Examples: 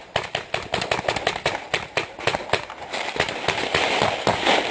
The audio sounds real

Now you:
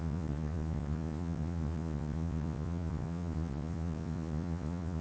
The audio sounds fake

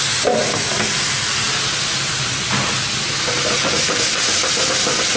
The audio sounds real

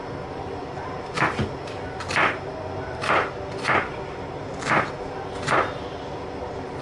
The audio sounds real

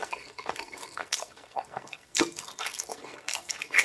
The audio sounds fake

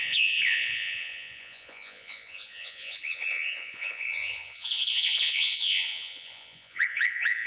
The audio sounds fake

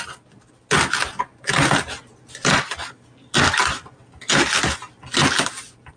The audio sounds real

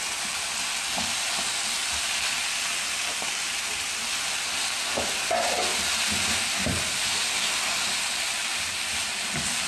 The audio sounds real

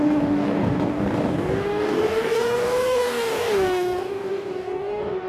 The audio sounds fake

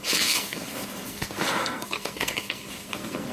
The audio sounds fake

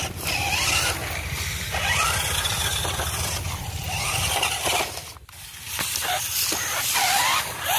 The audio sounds fake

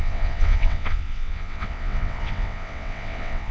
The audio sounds fake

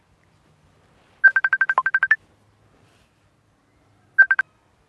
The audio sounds real